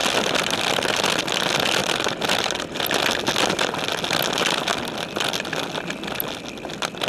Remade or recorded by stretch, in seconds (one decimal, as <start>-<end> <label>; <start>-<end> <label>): 0.0-7.1 recorded